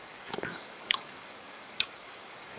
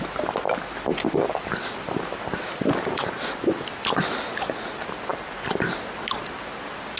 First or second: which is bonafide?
second